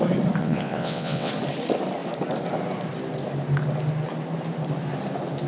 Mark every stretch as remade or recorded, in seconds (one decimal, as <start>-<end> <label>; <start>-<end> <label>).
0.0-0.4 recorded; 0.4-1.3 remade; 1.3-5.5 recorded